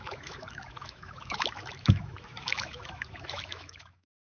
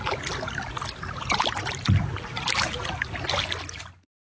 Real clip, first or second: second